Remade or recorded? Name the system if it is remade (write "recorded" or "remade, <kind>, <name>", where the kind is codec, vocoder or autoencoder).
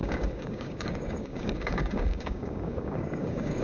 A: remade, codec, DAC